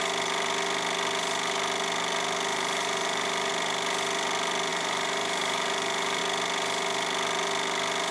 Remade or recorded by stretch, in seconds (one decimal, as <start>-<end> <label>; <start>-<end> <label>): 0.0-2.5 recorded; 2.5-3.5 remade; 3.5-4.7 recorded; 4.7-6.2 remade; 6.2-8.1 recorded